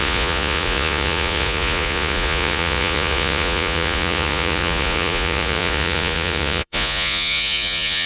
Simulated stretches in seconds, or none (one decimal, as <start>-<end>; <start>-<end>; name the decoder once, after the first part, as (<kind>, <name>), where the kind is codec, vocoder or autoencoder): 0.0-8.1 (vocoder, Vocos)